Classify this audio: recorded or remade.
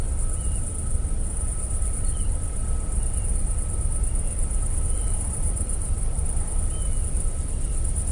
recorded